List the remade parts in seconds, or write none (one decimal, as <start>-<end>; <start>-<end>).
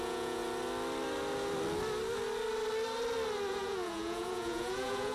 0.0-0.4; 3.5-5.1